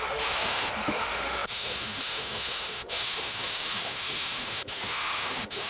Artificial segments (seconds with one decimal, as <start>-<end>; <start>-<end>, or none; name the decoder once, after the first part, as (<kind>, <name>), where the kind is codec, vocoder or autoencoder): 0.0-5.7 (autoencoder, DAC-VAE)